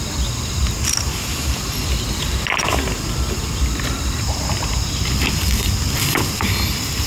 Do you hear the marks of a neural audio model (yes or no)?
no